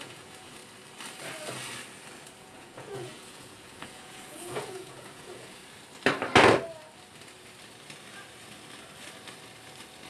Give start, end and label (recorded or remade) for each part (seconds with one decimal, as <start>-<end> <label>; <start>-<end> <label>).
0.0-0.6 remade; 0.6-2.4 recorded; 2.4-5.6 remade; 5.6-10.1 recorded